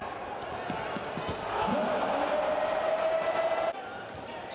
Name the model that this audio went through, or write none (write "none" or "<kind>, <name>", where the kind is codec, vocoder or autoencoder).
none